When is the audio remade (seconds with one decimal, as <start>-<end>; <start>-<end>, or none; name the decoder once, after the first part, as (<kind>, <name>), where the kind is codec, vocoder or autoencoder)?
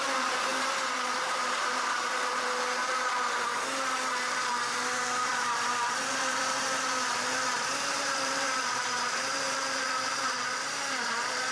0.0-3.5 (vocoder, BigVGAN v2); 4.2-11.5